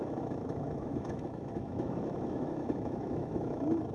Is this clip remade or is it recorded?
remade